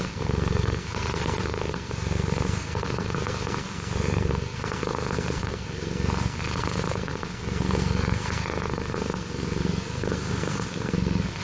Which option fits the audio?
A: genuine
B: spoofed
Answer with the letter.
B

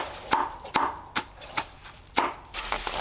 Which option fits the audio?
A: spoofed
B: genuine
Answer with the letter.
B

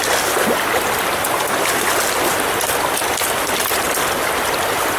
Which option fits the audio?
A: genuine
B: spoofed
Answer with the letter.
A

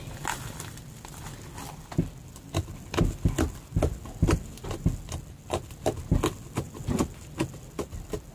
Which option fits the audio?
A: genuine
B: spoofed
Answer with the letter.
A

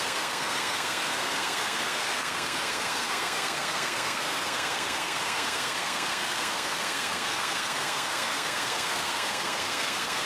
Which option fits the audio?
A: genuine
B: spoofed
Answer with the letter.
B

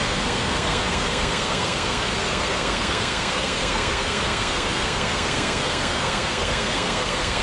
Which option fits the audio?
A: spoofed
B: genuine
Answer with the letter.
A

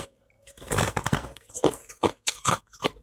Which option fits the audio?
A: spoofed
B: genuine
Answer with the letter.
A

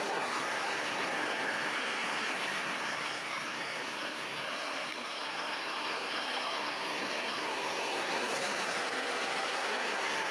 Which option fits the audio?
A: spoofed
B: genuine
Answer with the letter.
A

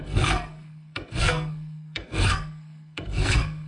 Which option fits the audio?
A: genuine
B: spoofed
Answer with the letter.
B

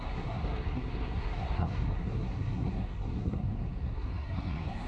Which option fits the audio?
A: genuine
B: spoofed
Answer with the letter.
B